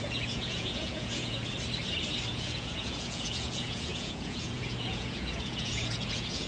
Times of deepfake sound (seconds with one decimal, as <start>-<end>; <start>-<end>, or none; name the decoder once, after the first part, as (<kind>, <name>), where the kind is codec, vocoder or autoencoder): 0.0-1.4 (vocoder, Vocos); 2.3-6.5